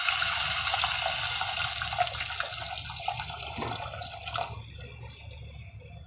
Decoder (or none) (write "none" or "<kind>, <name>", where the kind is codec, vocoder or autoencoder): none